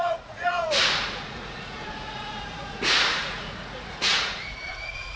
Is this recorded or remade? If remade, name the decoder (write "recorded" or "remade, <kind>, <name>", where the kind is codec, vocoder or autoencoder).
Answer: remade, vocoder, Vocos